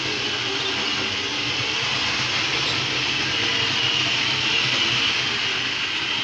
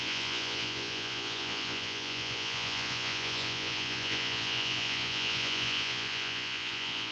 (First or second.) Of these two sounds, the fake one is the second